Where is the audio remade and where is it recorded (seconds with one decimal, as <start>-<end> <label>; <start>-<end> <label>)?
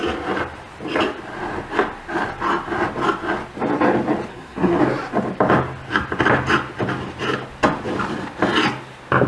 0.0-4.3 recorded; 4.3-4.8 remade; 4.8-9.3 recorded